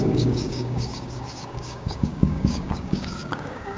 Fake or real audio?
fake